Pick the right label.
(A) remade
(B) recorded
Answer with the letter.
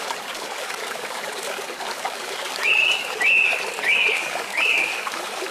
A